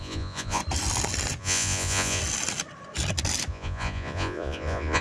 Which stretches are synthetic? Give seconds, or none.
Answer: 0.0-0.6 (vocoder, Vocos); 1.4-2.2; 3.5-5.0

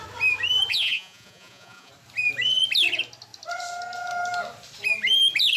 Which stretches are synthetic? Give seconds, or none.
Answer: 0.7-1.9 (vocoder, Vocos)